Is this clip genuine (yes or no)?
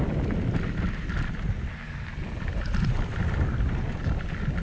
yes